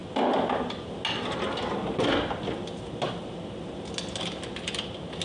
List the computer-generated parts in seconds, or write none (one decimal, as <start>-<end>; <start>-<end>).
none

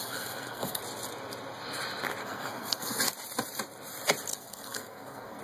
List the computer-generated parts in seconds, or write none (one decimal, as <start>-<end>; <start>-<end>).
0.0-0.8; 2.2-3.0; 4.3-5.4

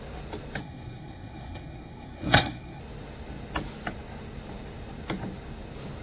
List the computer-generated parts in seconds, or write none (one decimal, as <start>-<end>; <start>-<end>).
0.6-2.8

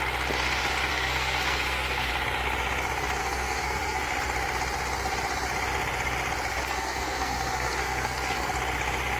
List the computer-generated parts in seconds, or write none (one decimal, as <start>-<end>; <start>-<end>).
0.9-2.1; 3.2-4.0; 6.5-8.5

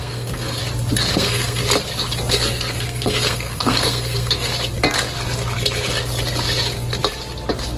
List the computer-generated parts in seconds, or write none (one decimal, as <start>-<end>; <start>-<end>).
0.0-0.6; 1.1-1.6; 2.3-4.5